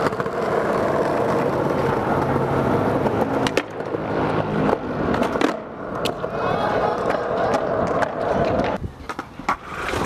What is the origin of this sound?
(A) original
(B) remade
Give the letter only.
A